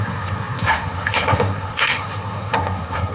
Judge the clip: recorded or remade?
remade